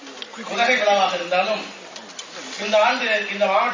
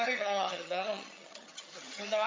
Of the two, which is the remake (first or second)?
second